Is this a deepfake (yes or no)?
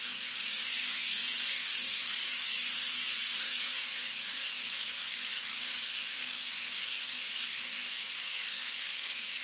yes